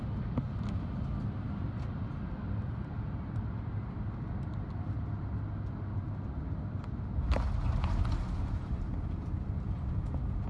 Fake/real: real